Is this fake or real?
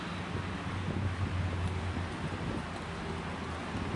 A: real